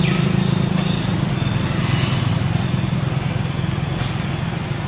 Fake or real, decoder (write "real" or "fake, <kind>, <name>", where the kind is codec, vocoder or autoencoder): real